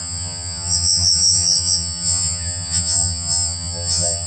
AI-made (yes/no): yes